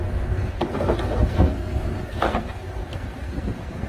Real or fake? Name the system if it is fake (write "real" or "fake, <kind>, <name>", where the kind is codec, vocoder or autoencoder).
fake, codec, SNAC